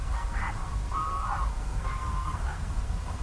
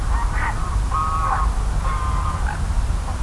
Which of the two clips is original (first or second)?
second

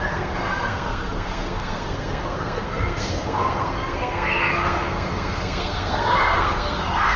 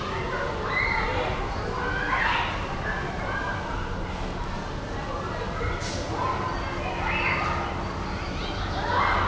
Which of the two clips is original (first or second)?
second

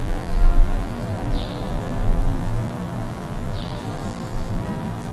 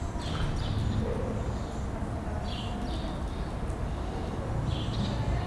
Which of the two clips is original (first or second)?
second